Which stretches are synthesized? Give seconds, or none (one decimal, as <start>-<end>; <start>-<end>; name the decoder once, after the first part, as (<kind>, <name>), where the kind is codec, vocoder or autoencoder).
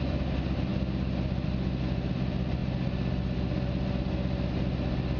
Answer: none